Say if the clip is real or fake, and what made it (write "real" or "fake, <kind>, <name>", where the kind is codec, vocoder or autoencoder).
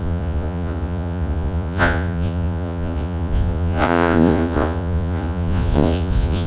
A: fake, vocoder, Vocos